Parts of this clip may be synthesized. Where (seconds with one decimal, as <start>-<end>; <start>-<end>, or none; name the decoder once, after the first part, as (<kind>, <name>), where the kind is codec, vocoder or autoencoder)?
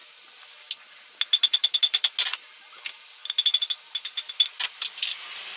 none